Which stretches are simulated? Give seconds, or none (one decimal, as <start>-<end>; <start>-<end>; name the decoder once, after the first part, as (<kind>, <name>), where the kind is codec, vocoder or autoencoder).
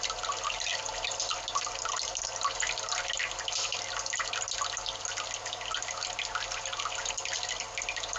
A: none